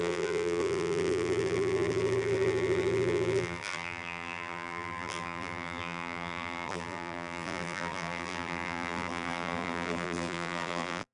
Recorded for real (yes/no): no